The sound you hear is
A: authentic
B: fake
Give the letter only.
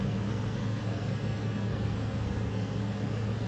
B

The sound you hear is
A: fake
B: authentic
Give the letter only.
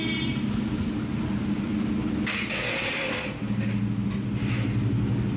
B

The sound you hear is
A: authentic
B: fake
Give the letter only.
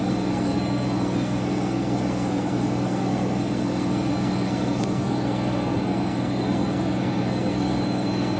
B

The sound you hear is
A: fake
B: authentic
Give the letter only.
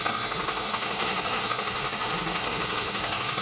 A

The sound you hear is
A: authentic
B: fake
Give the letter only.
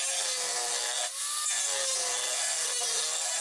A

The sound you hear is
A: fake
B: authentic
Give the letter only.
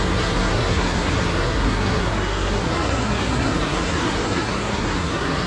A